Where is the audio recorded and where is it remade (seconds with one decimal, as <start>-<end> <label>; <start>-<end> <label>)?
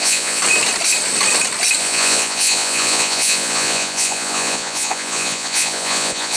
0.0-0.4 remade; 0.4-1.8 recorded; 1.8-6.4 remade